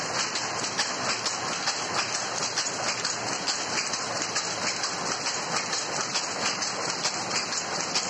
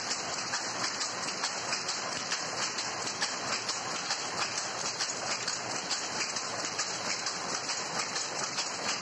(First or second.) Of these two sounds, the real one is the first